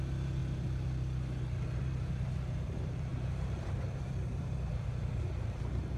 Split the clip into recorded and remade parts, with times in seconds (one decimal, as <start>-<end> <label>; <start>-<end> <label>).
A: 0.0-0.4 remade; 0.4-1.8 recorded; 1.8-6.0 remade